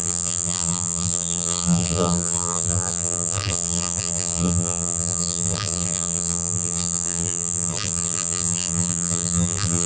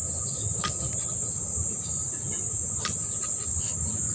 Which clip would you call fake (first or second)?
first